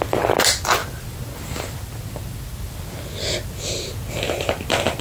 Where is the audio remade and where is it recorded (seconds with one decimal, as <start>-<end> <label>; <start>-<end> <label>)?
0.0-0.8 recorded; 0.8-3.8 remade; 3.8-5.0 recorded